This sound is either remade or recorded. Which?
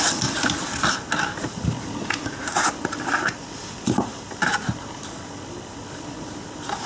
recorded